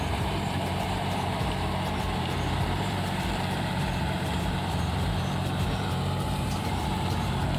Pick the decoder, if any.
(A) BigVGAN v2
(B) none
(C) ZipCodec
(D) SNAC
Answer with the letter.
A